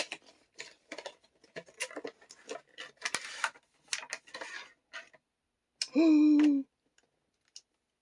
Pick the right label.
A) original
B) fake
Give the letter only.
A